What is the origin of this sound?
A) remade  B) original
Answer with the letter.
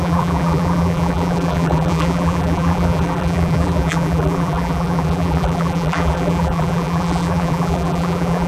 A